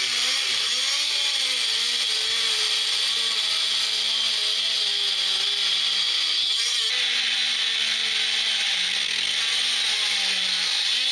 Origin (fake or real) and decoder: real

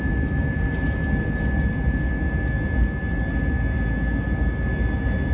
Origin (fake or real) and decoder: real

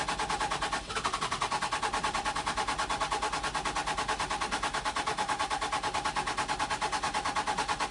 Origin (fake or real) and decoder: real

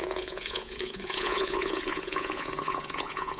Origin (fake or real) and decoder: fake, vocoder, Vocos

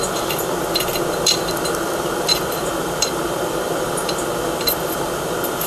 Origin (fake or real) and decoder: fake, vocoder, BigVGAN v2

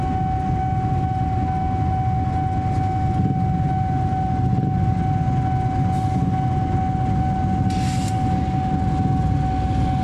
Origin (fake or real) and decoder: real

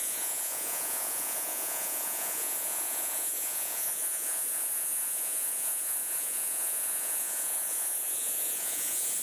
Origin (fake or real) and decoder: fake, vocoder, Vocos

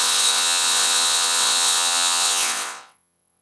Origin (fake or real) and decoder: fake, vocoder, WaveNeXt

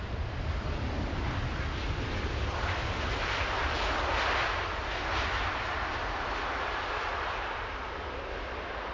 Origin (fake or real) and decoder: real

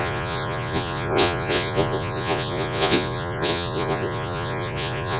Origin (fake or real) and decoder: fake, vocoder, Vocos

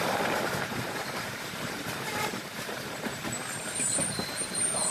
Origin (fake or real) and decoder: fake, vocoder, BigVGAN v2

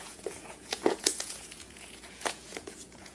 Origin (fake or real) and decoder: fake, vocoder, Vocos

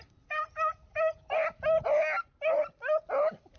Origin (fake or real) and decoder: real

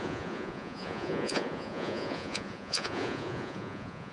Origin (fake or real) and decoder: fake, vocoder, Vocos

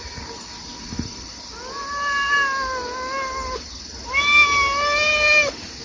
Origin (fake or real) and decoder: real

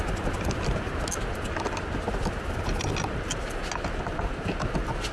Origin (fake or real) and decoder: real